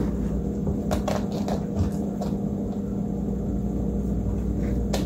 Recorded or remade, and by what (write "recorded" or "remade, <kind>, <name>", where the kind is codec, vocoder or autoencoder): recorded